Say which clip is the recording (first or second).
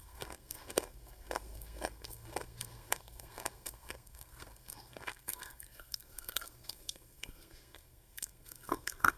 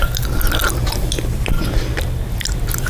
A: second